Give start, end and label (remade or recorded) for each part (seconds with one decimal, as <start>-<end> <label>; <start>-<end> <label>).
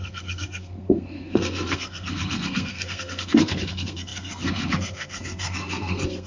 0.0-6.3 remade